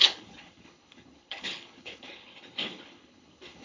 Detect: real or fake fake